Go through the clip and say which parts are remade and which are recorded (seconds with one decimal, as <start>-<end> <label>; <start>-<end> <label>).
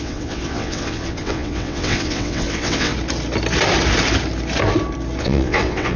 0.0-2.9 remade; 2.9-5.2 recorded; 5.2-6.0 remade